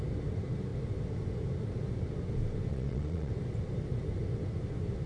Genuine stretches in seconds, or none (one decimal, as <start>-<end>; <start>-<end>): 0.0-2.7; 3.3-5.1